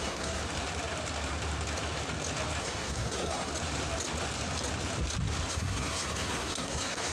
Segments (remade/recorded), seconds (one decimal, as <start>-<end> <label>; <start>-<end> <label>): 0.0-0.4 remade; 0.4-2.6 recorded; 2.6-3.5 remade; 3.5-5.5 recorded; 5.5-7.1 remade